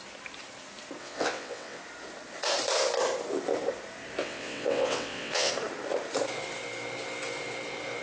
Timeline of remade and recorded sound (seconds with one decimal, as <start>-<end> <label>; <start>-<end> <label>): 0.0-1.0 recorded; 1.0-1.8 remade; 1.8-4.2 recorded; 4.2-5.5 remade; 5.5-8.0 recorded